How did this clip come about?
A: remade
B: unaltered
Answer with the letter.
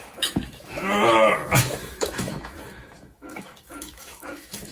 A